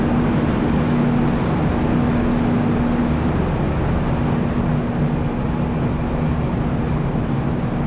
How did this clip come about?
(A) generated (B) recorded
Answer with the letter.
B